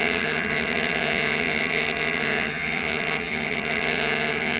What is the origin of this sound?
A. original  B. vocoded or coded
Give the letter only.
B